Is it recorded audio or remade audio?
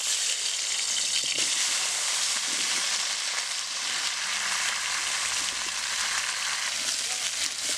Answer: recorded